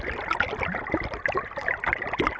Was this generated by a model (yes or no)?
no